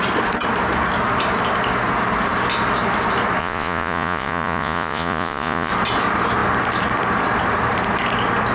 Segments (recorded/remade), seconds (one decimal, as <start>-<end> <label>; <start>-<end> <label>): 0.0-3.4 recorded; 3.4-5.7 remade; 5.7-8.5 recorded